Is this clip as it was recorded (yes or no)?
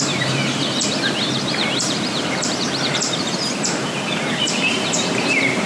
no